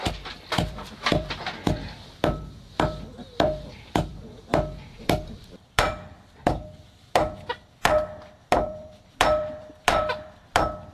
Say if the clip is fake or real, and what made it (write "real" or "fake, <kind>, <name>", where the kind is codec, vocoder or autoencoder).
fake, vocoder, BigVGAN v2